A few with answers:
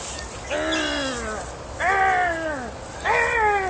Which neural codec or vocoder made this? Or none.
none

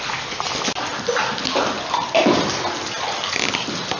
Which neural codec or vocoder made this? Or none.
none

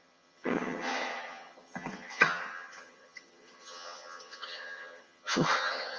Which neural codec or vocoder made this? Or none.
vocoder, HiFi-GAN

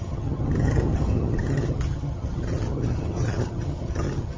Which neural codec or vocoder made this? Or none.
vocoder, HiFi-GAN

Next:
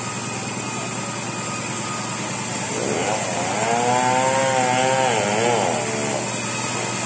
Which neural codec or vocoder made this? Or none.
none